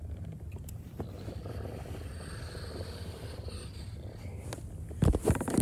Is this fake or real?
real